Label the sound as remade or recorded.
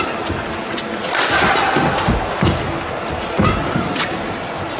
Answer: recorded